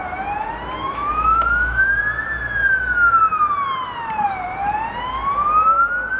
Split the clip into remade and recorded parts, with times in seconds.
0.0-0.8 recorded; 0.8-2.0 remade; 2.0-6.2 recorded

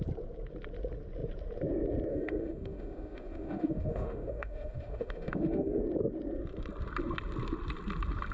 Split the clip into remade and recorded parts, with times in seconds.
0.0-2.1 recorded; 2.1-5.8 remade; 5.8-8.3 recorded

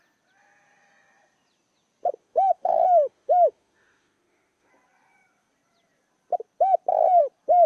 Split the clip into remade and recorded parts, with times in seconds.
0.0-2.2 recorded; 2.2-4.7 remade; 4.7-7.7 recorded

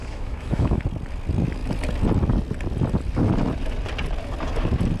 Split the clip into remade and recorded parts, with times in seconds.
0.0-0.8 remade; 0.8-5.0 recorded

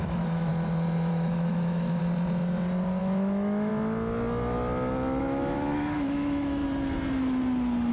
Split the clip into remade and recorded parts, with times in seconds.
0.0-0.5 remade; 0.5-1.1 recorded; 1.1-2.0 remade; 2.0-3.0 recorded; 3.0-3.7 remade; 3.7-5.2 recorded; 5.2-6.6 remade; 6.6-7.9 recorded

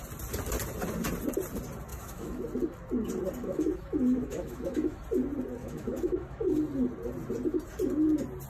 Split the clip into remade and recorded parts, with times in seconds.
0.0-1.9 recorded; 1.9-2.4 remade; 2.4-3.4 recorded; 3.4-5.0 remade; 5.0-5.6 recorded; 5.6-6.5 remade; 6.5-8.5 recorded